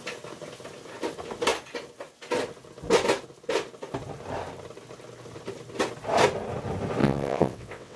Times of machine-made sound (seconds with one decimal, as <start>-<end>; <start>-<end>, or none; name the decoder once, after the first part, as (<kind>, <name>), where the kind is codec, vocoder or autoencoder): 7.0-8.0 (vocoder, WaveNeXt)